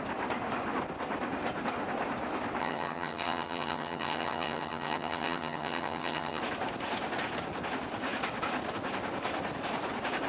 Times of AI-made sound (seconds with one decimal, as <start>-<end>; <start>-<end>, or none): 2.6-6.4